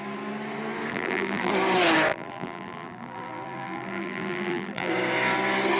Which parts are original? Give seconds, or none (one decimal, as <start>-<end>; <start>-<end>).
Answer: 0.0-0.9; 1.5-2.1; 4.9-5.8